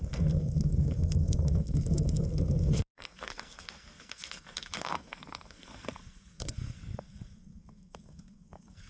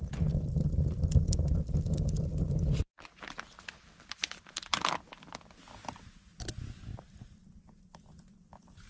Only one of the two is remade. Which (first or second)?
first